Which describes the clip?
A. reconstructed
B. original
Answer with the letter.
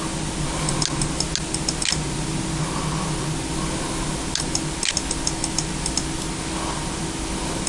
B